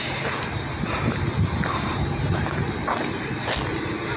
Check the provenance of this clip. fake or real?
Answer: real